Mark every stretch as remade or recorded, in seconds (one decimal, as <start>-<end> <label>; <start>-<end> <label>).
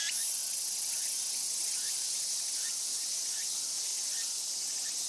0.0-5.1 recorded